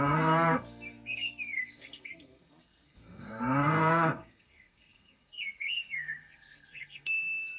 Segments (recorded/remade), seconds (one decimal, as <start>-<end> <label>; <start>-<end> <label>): 0.0-7.6 remade